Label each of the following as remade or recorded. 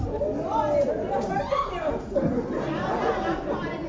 recorded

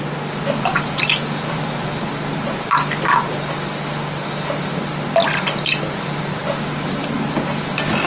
recorded